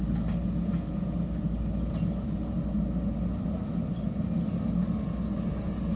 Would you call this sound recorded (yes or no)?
yes